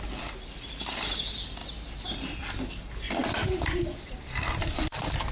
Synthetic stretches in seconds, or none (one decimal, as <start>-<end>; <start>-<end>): none